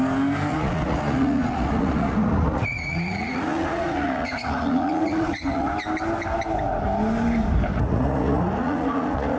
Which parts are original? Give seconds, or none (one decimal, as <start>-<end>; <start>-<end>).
0.0-0.5; 5.7-7.7